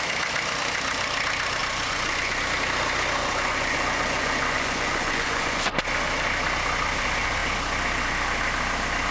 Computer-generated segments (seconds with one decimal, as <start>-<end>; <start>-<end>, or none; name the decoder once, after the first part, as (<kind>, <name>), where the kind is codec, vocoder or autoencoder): 1.6-2.4 (vocoder, Vocos); 3.2-5.7